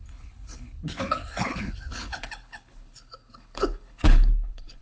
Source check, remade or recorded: remade